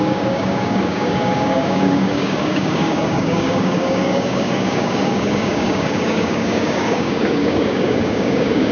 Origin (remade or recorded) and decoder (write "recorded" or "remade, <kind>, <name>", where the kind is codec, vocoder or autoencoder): remade, codec, DAC